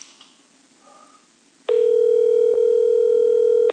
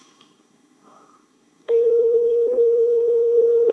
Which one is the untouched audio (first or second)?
first